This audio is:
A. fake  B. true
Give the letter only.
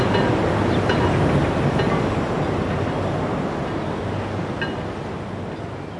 B